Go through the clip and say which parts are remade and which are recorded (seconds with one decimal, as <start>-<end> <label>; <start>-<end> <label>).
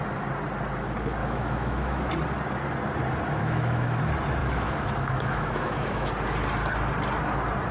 0.0-1.2 recorded; 1.2-2.1 remade; 2.1-3.4 recorded; 3.4-4.0 remade; 4.0-4.4 recorded; 4.4-6.1 remade; 6.1-7.7 recorded